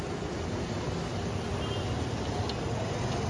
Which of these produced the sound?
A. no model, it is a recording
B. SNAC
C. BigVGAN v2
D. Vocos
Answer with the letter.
A